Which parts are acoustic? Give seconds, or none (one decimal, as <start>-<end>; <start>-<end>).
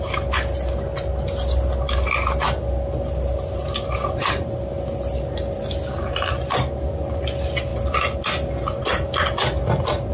0.0-10.1